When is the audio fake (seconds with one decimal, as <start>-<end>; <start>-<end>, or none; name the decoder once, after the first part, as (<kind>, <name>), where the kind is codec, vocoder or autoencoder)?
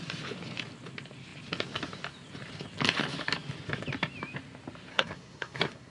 4.9-5.9 (codec, SNAC)